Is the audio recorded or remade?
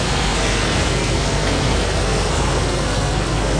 remade